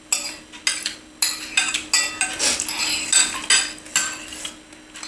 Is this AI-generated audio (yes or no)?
no